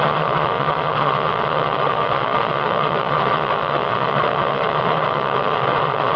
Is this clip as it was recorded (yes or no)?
no